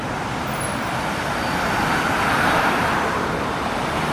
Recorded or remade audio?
recorded